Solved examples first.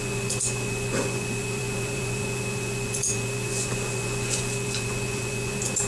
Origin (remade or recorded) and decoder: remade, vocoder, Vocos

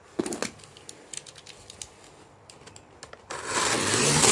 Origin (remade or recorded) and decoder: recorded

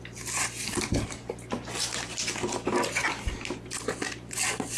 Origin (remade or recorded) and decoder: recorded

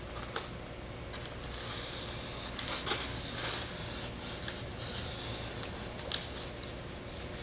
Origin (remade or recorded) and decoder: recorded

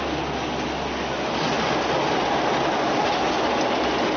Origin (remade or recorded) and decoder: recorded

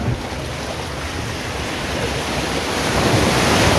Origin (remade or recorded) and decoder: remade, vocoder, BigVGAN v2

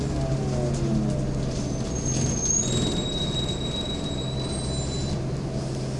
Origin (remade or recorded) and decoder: recorded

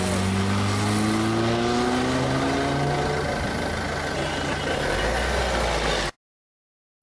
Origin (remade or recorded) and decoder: recorded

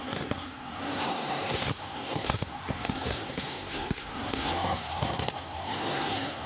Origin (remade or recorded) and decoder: remade, codec, SNAC